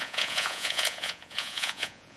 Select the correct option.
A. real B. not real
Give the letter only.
B